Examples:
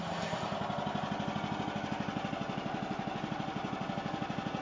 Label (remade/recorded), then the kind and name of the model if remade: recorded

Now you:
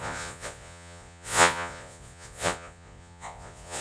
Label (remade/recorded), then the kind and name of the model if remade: remade, vocoder, Vocos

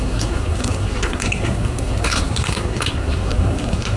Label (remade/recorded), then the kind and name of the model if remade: remade, codec, SNAC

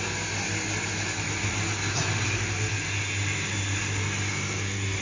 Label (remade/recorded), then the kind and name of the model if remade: recorded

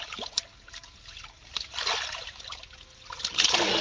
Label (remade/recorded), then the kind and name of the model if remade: recorded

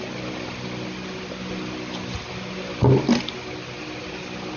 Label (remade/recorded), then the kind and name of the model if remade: recorded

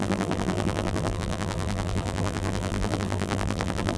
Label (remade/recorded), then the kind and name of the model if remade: remade, vocoder, BigVGAN v2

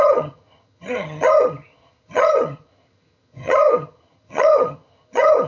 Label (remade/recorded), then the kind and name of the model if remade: remade, vocoder, HiFi-GAN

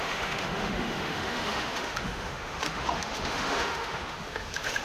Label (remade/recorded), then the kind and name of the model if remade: remade, autoencoder, DAC-VAE